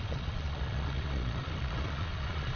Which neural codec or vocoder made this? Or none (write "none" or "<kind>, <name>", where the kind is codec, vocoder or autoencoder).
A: vocoder, Vocos